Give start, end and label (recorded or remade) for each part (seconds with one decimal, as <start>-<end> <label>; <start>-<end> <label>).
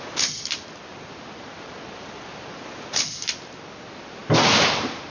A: 0.0-5.1 recorded